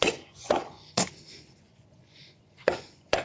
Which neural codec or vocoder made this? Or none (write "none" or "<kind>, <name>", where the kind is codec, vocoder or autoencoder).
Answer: vocoder, Vocos